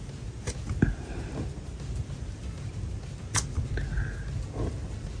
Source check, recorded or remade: recorded